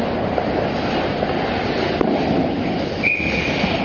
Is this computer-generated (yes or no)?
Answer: no